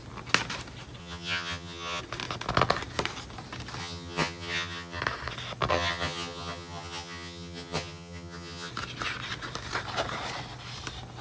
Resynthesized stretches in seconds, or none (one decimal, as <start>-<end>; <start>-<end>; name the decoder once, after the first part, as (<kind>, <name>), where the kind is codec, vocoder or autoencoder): 1.0-2.0 (vocoder, HiFi-GAN); 3.8-5.0; 5.7-8.7